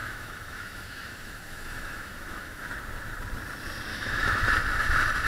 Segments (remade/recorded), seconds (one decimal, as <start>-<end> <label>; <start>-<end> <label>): 0.0-2.7 remade; 2.7-3.9 recorded; 3.9-4.5 remade; 4.5-5.3 recorded